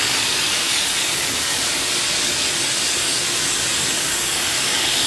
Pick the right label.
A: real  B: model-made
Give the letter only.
B